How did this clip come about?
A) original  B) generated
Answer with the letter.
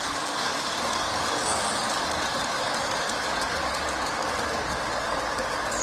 B